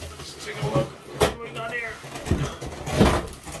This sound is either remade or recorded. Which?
recorded